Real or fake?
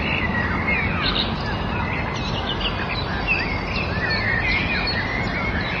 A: real